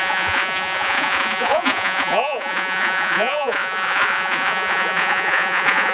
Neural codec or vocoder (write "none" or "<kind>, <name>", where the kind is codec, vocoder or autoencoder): vocoder, Vocos